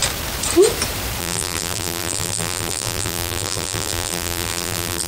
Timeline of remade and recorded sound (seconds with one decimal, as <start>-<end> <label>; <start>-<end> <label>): 0.0-1.2 recorded; 1.2-5.1 remade